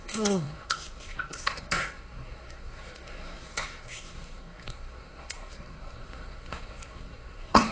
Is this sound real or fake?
fake